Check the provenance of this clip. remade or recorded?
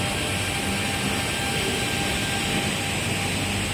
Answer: recorded